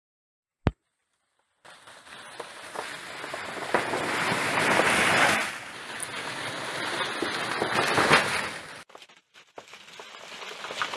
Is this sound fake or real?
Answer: real